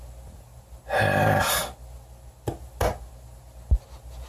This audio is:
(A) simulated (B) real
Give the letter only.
B